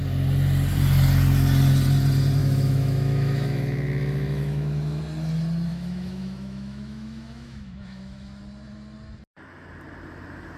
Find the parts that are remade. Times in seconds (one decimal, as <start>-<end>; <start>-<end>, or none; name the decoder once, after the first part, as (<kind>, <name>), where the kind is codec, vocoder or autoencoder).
2.4-5.0 (autoencoder, DAC-VAE); 5.7-8.4